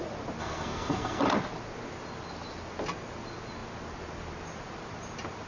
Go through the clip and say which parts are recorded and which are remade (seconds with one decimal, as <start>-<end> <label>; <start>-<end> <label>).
0.0-0.4 recorded; 0.4-1.2 remade; 1.2-5.5 recorded